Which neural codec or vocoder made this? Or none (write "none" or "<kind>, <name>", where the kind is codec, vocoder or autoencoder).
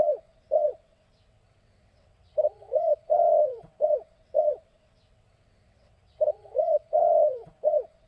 vocoder, WaveNeXt